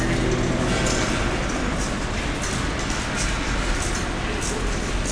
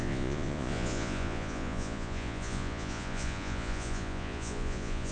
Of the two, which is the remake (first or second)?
second